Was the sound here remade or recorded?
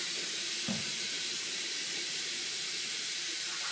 remade